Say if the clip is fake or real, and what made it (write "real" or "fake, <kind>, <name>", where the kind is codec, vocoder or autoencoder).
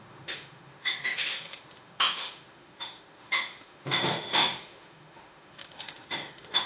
fake, autoencoder, DAC-VAE